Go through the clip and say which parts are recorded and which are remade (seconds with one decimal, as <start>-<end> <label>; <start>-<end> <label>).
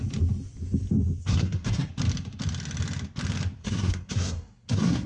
0.0-1.2 recorded; 1.2-1.9 remade; 1.9-3.6 recorded; 3.6-5.1 remade